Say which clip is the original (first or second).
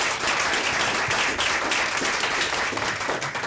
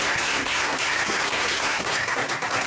first